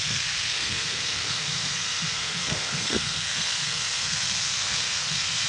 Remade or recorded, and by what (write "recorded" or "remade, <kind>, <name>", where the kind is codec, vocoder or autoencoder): remade, codec, SNAC